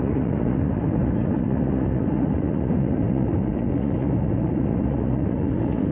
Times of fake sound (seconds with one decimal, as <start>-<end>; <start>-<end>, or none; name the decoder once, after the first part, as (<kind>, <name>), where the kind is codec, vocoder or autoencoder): 0.0-5.9 (vocoder, Vocos)